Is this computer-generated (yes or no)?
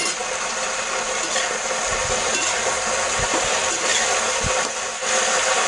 no